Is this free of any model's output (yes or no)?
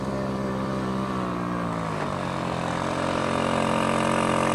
yes